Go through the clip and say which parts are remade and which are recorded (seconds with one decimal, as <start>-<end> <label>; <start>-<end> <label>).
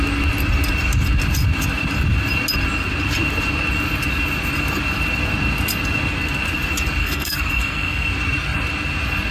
0.0-7.0 recorded; 7.0-8.1 remade; 8.1-9.3 recorded